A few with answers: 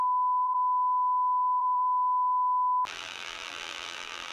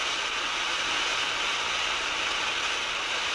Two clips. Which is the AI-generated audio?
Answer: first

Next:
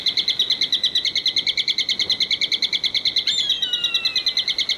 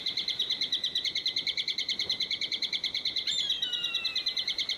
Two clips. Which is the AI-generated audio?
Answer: second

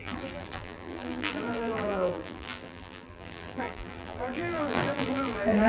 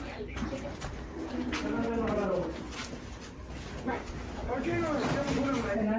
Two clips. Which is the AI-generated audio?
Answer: first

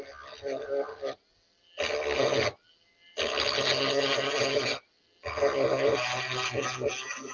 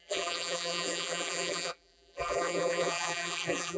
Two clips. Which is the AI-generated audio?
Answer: second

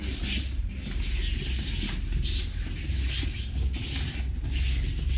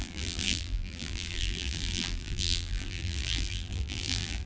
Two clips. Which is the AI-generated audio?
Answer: second